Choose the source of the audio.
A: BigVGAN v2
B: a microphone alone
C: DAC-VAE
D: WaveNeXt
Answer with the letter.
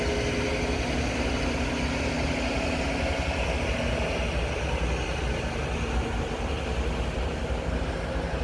B